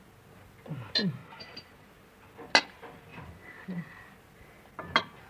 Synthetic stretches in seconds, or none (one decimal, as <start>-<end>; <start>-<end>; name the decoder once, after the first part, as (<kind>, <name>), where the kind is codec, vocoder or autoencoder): 1.2-1.9 (vocoder, BigVGAN v2); 3.1-4.0